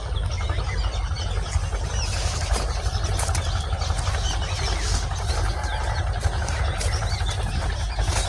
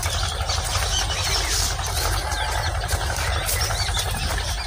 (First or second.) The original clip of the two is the second